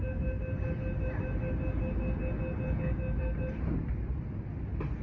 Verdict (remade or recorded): recorded